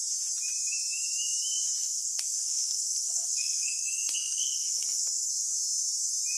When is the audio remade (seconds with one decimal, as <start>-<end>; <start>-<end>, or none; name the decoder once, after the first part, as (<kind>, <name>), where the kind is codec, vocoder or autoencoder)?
1.8-5.3 (codec, SNAC)